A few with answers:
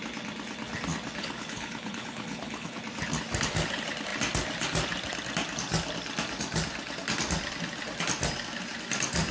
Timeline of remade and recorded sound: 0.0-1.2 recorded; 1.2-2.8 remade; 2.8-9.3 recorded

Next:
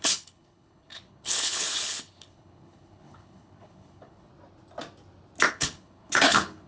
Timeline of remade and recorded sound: 0.0-4.3 remade; 4.3-5.5 recorded; 5.5-6.7 remade

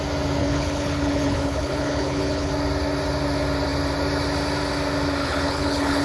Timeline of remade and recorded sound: 0.0-0.4 recorded; 0.4-2.5 remade; 2.5-5.2 recorded; 5.2-6.0 remade

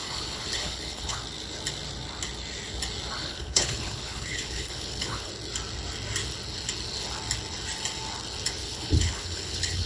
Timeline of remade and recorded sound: 0.0-1.2 remade; 1.2-3.2 recorded; 3.2-5.3 remade; 5.3-8.6 recorded; 8.6-9.9 remade

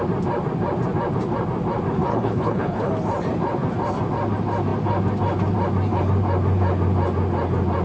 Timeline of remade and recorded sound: 0.0-2.1 recorded; 2.1-2.9 remade; 2.9-7.8 recorded

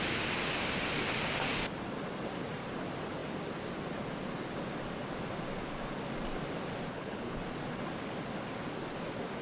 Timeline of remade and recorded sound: 0.0-6.9 recorded; 6.9-7.4 remade; 7.4-9.4 recorded

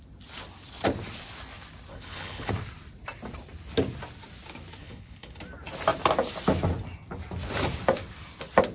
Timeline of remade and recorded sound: 0.0-1.9 recorded; 1.9-2.5 remade; 2.5-4.8 recorded; 4.8-5.4 remade; 5.4-8.7 recorded